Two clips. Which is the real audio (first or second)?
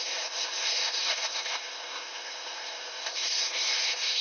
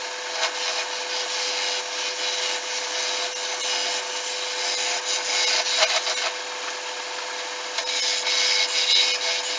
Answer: second